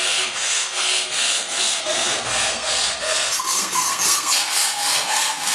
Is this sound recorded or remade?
remade